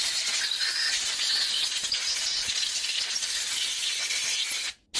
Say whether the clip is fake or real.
real